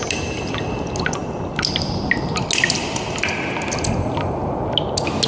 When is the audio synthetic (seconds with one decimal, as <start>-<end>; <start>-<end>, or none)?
none